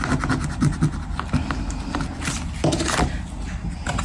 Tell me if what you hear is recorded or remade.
recorded